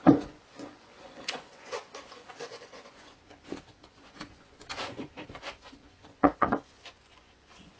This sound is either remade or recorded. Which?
remade